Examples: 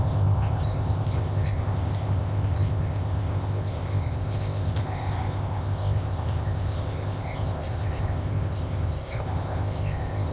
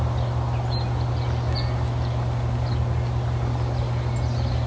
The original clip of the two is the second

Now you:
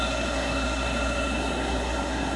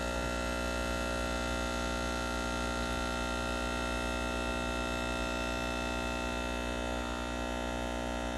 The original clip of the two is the second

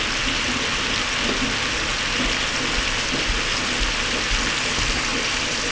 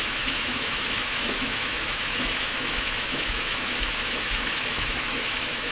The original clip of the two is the first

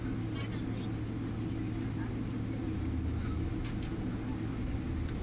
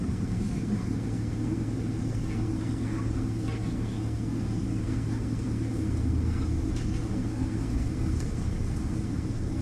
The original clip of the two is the first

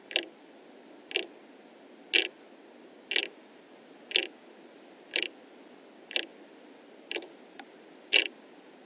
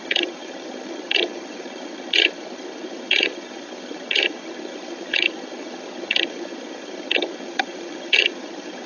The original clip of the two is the first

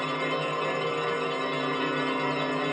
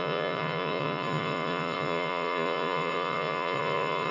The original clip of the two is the first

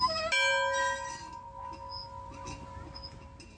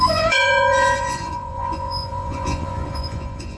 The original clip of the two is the first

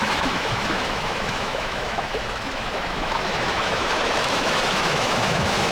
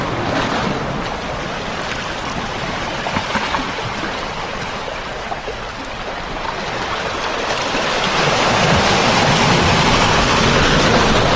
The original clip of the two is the second